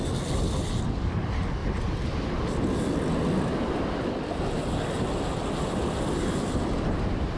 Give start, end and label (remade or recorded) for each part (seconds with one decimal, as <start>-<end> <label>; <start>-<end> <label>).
0.0-7.4 recorded